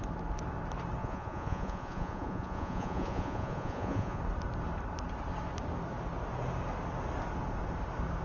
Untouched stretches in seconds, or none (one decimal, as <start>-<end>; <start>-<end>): 0.0-1.0; 4.2-8.2

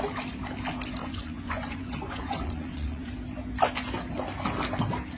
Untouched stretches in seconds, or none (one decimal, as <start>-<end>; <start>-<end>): 0.0-1.0; 3.1-5.2

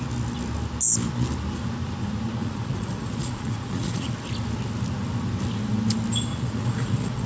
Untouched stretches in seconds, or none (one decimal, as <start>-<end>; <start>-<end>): 0.0-2.4; 4.1-6.3

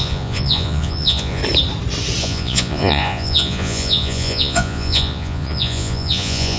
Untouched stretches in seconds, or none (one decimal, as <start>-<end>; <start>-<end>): 1.4-2.2